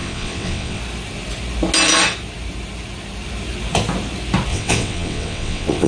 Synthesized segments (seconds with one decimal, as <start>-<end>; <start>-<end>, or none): 0.0-0.8; 4.5-5.9